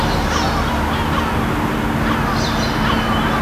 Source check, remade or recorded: recorded